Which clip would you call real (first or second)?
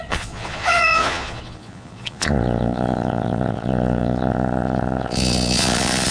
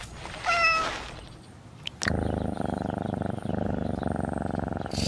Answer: second